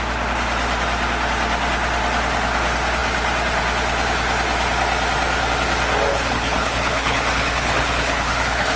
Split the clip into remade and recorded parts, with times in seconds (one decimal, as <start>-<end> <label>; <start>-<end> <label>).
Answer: 0.0-6.1 recorded; 6.1-8.8 remade